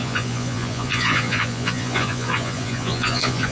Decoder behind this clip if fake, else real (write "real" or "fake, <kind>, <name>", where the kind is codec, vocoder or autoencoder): fake, vocoder, Vocos